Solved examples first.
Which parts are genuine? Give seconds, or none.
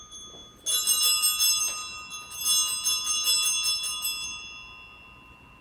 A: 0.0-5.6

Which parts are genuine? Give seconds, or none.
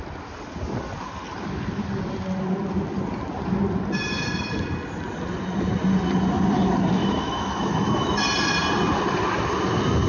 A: 0.0-7.0; 8.2-10.1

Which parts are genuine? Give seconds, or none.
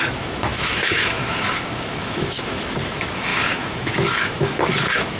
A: none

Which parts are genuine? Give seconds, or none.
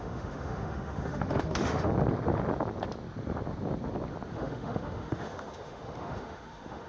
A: 1.9-4.3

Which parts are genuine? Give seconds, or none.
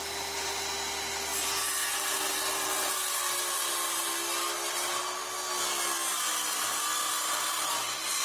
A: 0.0-8.2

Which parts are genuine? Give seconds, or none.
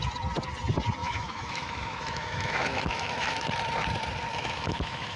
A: 0.0-1.0; 3.5-4.3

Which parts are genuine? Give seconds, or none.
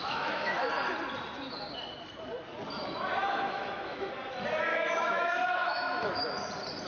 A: 0.7-3.2; 4.1-4.7; 6.3-6.9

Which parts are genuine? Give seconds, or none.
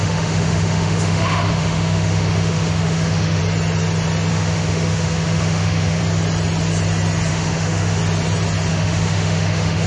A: 3.4-4.3; 6.0-7.3; 8.0-8.7